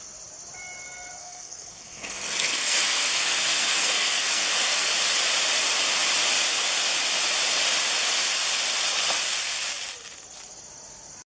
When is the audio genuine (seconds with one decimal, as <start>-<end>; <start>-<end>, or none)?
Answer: 0.0-1.2; 4.9-11.3